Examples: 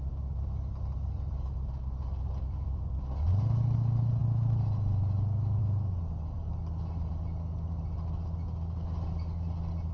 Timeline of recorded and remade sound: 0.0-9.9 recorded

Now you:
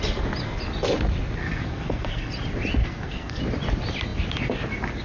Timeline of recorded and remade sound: 0.0-1.4 recorded; 1.4-2.3 remade; 2.3-2.8 recorded; 2.8-3.4 remade; 3.4-5.0 recorded

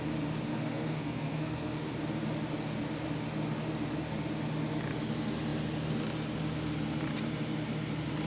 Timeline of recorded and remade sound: 0.0-0.5 recorded; 0.5-1.9 remade; 1.9-8.3 recorded

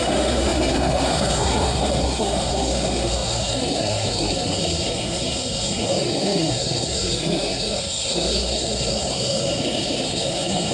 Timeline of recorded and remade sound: 0.0-10.7 remade

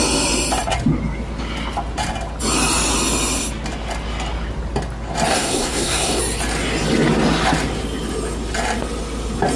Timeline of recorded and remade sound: 0.0-5.3 recorded; 5.3-6.2 remade; 6.2-9.6 recorded

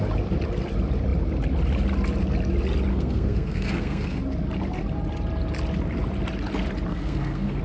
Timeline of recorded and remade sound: 0.0-2.9 recorded; 2.9-4.2 remade; 4.2-6.9 recorded; 6.9-7.6 remade

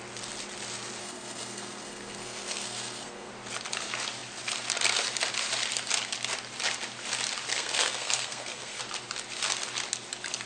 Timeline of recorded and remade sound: 0.0-1.0 recorded; 1.0-3.3 remade; 3.3-7.5 recorded; 7.5-8.8 remade; 8.8-10.5 recorded

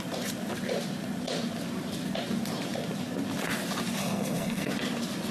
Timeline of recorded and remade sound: 0.0-4.0 recorded; 4.0-4.7 remade; 4.7-5.3 recorded